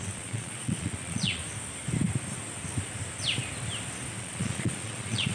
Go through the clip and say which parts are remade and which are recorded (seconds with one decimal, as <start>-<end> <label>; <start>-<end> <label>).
0.0-1.4 remade; 1.4-4.2 recorded; 4.2-5.3 remade